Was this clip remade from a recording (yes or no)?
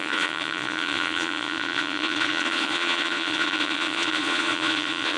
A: yes